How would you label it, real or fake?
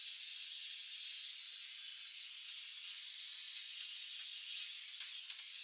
real